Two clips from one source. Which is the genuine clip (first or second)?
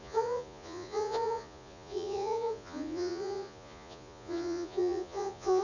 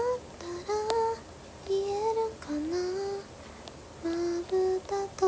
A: second